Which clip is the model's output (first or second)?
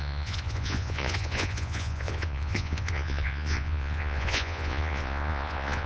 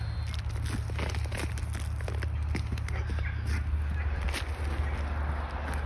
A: first